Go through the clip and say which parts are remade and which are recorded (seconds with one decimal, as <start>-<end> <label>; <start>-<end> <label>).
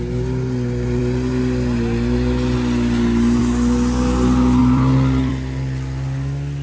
0.0-4.6 recorded; 4.6-5.3 remade; 5.3-6.6 recorded